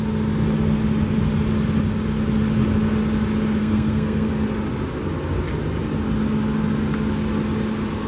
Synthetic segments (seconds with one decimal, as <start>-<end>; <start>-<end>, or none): 3.6-4.3